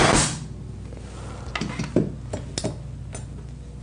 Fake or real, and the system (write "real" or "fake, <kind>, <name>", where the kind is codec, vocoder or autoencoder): real